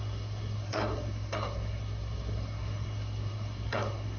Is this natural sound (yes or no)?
no